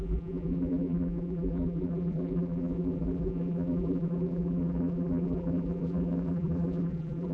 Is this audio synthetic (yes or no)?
yes